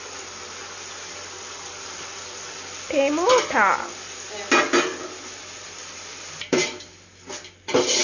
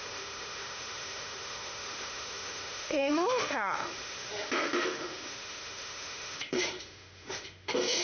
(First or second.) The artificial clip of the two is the second